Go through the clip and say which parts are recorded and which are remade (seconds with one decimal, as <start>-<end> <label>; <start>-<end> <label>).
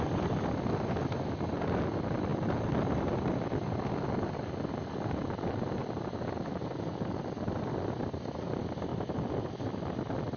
0.0-2.3 recorded; 2.3-7.6 remade; 7.6-10.4 recorded